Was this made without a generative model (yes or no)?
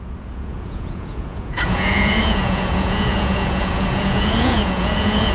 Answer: no